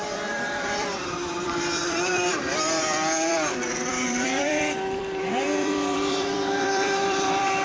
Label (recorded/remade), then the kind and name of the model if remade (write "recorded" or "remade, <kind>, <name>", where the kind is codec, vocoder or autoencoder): remade, vocoder, BigVGAN v2